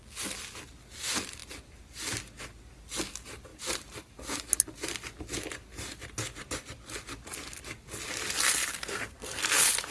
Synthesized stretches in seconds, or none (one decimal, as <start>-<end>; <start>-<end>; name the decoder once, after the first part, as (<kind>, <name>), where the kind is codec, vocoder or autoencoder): 8.7-9.4 (codec, SNAC)